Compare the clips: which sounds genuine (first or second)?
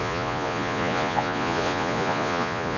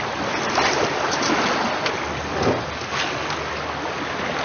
second